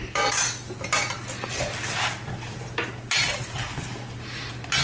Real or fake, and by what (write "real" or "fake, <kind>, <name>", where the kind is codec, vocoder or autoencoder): real